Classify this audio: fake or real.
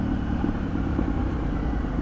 fake